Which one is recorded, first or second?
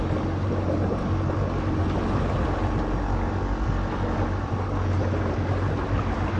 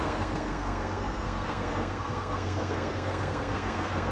first